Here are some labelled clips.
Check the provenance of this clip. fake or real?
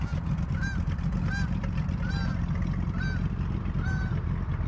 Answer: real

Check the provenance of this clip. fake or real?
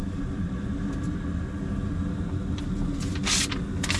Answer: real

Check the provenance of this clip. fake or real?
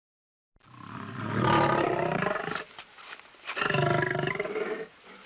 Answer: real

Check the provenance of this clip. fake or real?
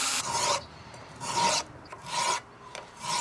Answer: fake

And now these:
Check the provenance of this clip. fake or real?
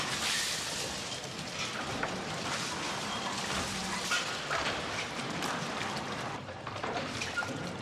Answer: fake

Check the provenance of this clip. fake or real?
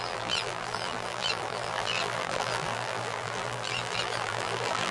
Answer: fake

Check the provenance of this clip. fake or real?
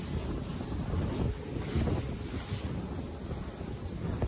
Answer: real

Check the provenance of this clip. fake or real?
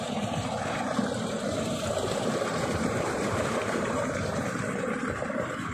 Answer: fake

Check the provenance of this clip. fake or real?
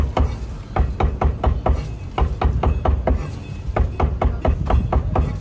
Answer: real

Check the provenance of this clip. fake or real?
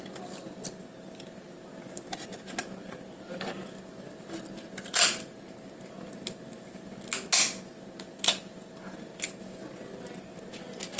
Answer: real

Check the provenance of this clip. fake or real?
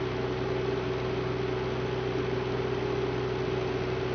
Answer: real